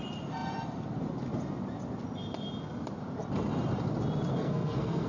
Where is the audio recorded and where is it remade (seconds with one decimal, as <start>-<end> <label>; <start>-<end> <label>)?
0.0-4.3 recorded; 4.3-5.1 remade